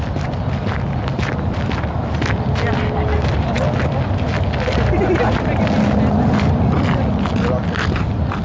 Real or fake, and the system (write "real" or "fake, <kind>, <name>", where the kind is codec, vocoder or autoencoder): real